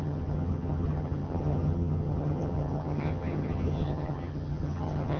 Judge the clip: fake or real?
fake